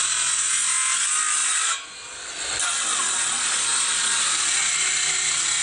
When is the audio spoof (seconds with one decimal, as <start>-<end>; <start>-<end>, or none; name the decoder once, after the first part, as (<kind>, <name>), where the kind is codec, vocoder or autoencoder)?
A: none